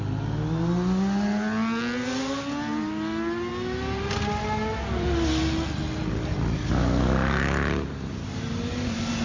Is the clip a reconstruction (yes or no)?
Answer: no